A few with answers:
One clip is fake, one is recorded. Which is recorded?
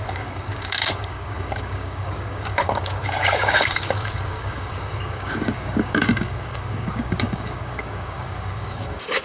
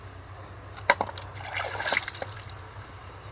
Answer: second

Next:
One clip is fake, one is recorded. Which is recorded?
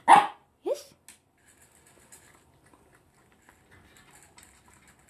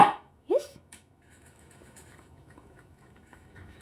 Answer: first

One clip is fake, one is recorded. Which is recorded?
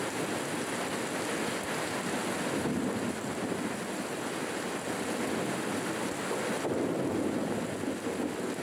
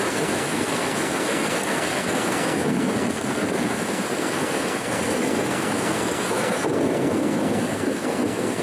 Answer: first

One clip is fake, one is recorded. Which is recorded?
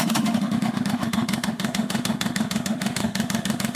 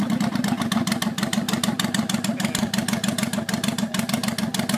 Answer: second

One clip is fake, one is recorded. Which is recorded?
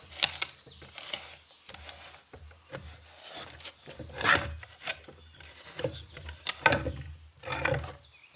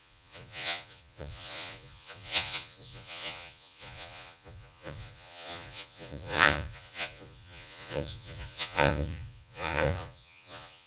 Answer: first